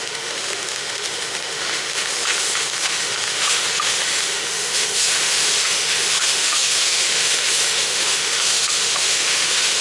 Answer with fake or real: fake